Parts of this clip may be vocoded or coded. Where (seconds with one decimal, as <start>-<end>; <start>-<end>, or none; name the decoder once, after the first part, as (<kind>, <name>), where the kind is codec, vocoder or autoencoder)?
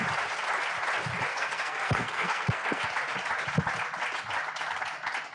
1.3-2.9 (codec, SNAC)